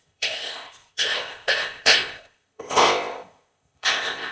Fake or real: fake